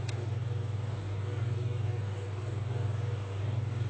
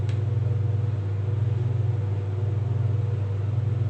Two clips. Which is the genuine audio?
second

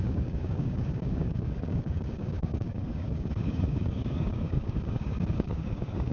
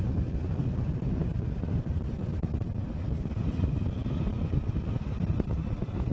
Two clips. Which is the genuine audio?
second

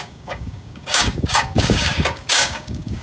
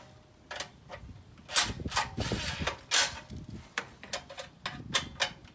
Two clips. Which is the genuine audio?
second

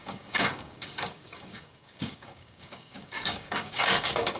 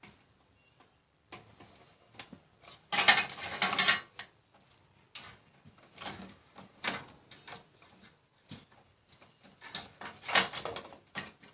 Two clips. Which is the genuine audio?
second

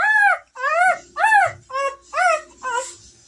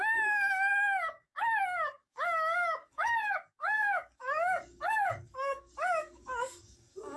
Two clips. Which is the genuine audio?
first